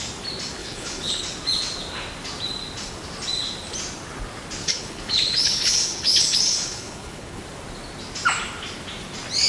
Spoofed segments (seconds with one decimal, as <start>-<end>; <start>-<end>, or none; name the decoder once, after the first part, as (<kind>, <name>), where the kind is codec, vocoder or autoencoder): 0.6-1.2 (codec, HILCodec); 4.6-7.4